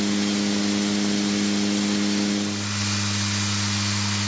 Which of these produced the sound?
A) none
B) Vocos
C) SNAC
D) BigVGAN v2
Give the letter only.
A